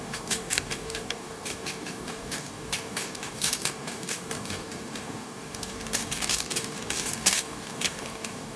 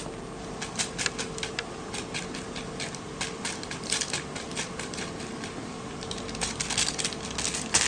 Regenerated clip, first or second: first